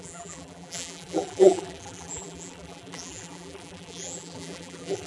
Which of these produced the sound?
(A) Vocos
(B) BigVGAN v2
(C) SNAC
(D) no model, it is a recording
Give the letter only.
B